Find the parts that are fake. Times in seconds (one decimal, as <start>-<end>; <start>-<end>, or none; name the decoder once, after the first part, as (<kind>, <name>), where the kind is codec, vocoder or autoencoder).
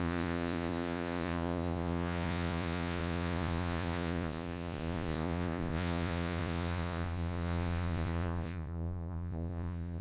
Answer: 0.0-10.0 (vocoder, Vocos)